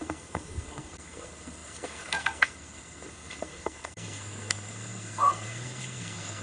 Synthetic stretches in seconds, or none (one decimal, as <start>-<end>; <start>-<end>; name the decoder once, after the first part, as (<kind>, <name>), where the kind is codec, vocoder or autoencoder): 0.0-6.4 (codec, SNAC)

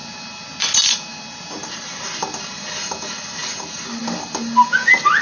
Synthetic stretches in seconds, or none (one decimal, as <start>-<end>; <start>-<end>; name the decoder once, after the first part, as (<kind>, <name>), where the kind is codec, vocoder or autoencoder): none

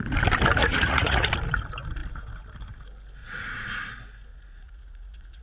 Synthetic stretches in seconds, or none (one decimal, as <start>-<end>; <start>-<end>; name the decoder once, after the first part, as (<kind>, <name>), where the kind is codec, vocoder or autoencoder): 0.6-1.3 (vocoder, Vocos); 3.2-3.9; 4.3-5.4

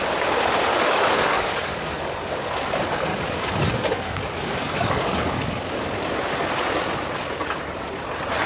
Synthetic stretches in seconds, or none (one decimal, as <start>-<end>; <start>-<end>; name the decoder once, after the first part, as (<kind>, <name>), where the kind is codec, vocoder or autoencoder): 0.7-2.6 (codec, DAC); 3.1-5.8

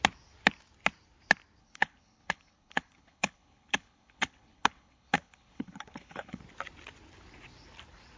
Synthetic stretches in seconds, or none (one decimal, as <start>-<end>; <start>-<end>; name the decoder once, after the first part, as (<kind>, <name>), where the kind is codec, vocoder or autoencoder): 1.6-6.4 (codec, HILCodec)

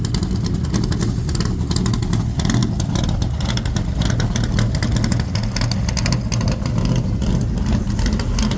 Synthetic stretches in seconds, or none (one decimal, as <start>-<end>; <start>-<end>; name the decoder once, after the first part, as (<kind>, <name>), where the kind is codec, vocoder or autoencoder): none

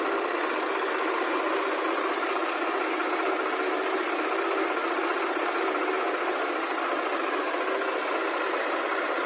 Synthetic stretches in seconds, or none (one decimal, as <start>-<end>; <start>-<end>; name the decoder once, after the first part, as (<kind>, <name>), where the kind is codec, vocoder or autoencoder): none